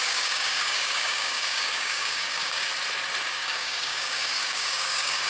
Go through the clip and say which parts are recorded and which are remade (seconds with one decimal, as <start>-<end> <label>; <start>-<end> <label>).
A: 0.0-2.7 remade; 2.7-3.3 recorded; 3.3-5.3 remade